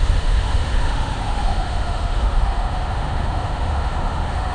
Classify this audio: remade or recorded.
remade